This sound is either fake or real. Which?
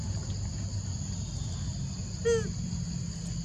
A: real